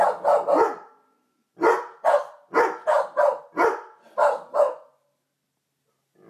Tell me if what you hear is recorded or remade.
recorded